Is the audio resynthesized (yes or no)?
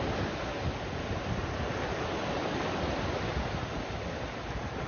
no